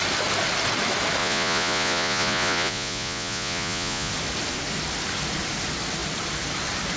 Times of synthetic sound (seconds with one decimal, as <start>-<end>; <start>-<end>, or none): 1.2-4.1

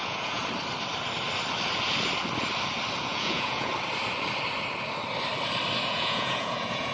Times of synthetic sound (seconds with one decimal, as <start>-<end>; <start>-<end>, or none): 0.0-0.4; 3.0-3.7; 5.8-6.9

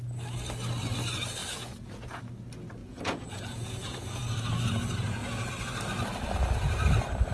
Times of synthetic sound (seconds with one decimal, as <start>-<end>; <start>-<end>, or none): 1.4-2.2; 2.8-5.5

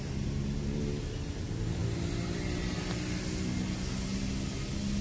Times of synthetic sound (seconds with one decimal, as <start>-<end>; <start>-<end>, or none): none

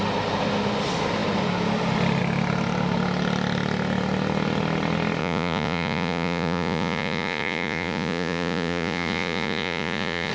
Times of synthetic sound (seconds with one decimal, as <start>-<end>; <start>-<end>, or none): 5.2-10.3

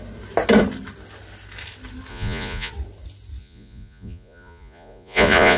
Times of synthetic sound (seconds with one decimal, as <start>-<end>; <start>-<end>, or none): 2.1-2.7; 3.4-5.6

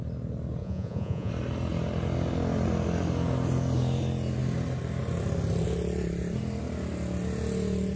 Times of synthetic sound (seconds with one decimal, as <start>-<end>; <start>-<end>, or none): 0.6-1.3

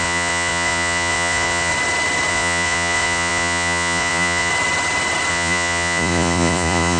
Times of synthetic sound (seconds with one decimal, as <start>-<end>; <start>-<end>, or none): 0.0-1.7; 2.3-4.5; 5.3-7.0